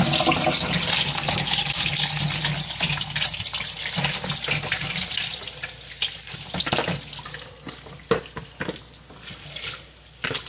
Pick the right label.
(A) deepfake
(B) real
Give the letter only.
B